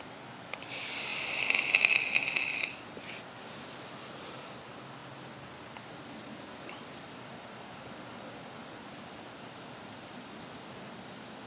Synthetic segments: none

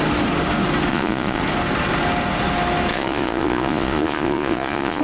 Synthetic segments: 0.9-1.4 (vocoder, Vocos); 2.9-5.0